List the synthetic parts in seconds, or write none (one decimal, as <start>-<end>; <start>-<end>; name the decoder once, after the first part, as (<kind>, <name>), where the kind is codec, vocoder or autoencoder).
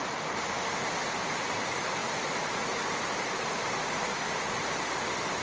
2.0-4.8 (vocoder, BigVGAN v2)